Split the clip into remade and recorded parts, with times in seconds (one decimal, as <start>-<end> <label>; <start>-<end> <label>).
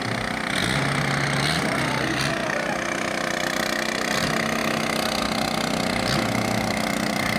0.0-7.4 recorded